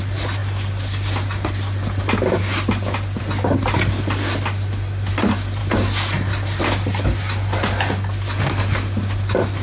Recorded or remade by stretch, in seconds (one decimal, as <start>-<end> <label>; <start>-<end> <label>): 0.0-9.6 recorded